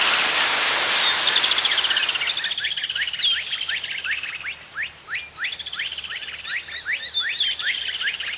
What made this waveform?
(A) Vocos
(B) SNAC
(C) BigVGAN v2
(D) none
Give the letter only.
D